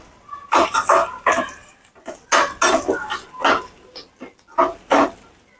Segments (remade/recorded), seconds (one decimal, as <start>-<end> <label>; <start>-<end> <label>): 0.0-1.0 recorded; 1.0-2.2 remade; 2.2-5.6 recorded